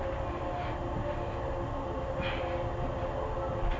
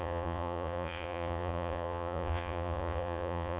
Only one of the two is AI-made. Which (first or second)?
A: second